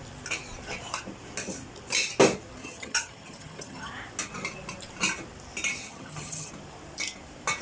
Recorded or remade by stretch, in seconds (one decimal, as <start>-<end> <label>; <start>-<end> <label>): 0.0-2.6 recorded; 2.6-3.9 remade; 3.9-5.8 recorded; 5.8-6.5 remade; 6.5-7.6 recorded